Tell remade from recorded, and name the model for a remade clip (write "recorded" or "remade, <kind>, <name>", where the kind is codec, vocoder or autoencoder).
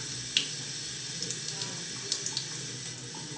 recorded